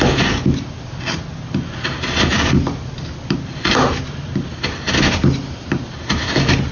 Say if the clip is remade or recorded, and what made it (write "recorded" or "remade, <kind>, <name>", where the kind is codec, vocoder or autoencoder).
recorded